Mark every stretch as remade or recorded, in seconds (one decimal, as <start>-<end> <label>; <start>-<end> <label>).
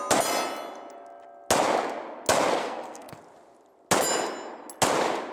0.0-2.6 recorded; 2.6-3.2 remade; 3.2-5.3 recorded